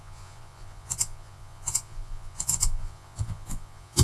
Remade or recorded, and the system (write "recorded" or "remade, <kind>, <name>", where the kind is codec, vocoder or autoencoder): remade, vocoder, Vocos